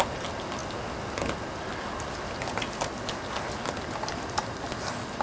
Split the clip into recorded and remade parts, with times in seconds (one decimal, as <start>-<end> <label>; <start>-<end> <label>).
0.0-5.2 recorded